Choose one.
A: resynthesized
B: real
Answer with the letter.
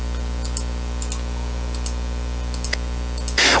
B